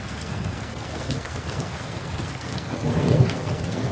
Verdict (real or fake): fake